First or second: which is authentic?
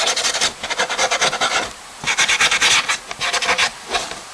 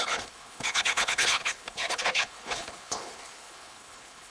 first